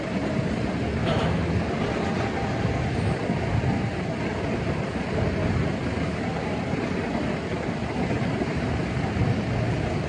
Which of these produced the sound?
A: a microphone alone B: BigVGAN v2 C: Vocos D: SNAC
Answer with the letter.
A